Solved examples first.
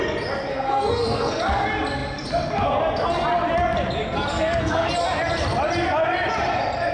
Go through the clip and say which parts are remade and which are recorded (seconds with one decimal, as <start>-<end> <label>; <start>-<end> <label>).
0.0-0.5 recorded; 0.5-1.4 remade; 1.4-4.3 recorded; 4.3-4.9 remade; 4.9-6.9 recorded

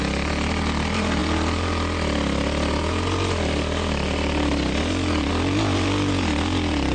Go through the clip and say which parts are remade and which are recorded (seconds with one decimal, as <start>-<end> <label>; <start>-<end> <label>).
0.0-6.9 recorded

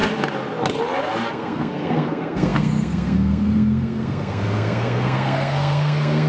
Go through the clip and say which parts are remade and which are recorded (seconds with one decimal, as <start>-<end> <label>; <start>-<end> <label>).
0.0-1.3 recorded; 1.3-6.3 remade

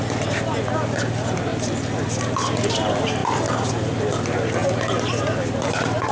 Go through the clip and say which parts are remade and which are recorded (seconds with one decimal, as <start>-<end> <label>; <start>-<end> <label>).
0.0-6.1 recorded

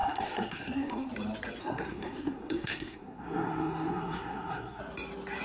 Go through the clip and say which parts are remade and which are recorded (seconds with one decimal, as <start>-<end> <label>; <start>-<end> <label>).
0.0-1.1 remade; 1.1-1.6 recorded; 1.6-4.8 remade; 4.8-5.4 recorded

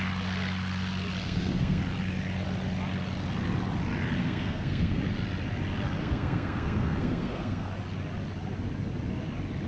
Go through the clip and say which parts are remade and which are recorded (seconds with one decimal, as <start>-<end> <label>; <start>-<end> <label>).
0.0-1.2 recorded; 1.2-1.8 remade; 1.8-4.2 recorded; 4.2-5.0 remade; 5.0-6.0 recorded; 6.0-7.7 remade; 7.7-9.7 recorded